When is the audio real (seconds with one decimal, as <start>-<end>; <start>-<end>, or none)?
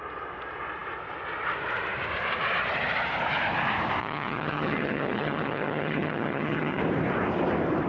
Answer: 0.0-4.0; 6.8-7.9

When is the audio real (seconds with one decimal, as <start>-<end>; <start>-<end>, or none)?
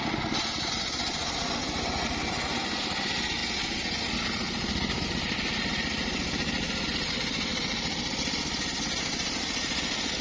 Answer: 0.0-10.2